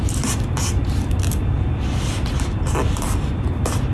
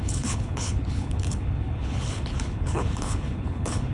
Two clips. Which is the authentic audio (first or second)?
first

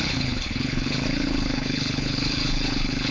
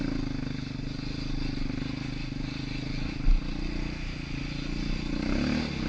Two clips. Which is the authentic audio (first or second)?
second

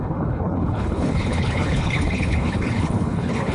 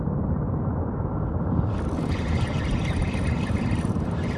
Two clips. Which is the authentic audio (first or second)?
second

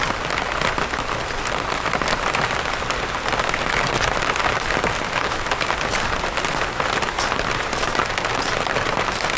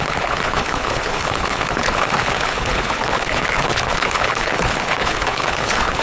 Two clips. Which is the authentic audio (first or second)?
first